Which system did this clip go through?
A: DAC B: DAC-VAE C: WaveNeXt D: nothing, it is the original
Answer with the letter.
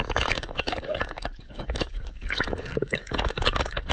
A